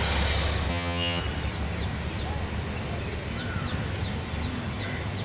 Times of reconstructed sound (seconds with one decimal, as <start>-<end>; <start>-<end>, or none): 0.7-1.2